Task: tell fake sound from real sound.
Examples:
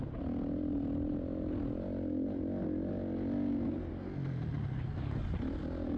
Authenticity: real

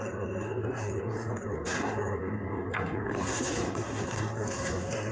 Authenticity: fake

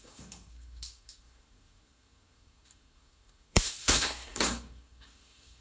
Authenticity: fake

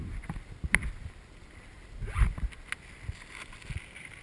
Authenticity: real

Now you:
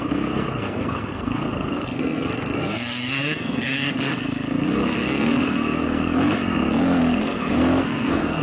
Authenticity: fake